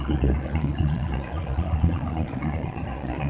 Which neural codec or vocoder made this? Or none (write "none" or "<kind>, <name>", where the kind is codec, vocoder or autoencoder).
vocoder, Vocos